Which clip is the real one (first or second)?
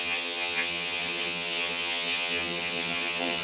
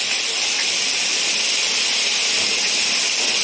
second